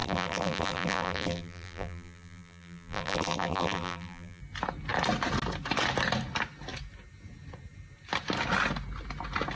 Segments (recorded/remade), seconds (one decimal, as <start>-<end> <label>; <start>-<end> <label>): 0.0-4.4 remade; 4.4-9.6 recorded